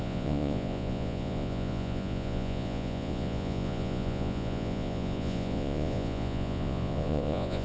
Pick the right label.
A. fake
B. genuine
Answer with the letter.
A